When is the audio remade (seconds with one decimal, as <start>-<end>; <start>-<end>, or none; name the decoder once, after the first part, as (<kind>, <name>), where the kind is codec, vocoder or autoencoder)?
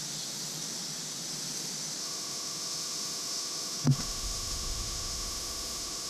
2.0-6.1 (autoencoder, DAC-VAE)